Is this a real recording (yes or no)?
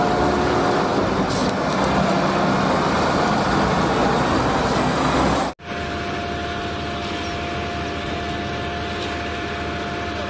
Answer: yes